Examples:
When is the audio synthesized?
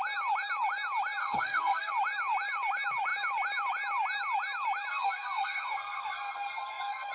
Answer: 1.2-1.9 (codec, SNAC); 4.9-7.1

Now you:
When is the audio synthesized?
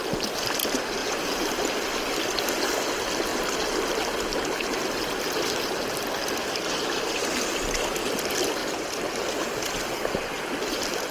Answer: 1.0-1.7 (vocoder, BigVGAN v2)